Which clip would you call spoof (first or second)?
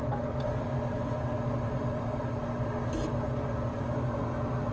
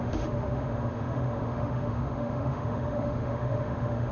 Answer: second